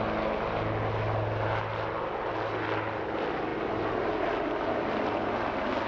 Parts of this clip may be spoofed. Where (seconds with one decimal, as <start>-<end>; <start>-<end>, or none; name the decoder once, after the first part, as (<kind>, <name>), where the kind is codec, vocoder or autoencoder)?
none